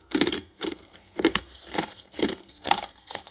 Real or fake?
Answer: fake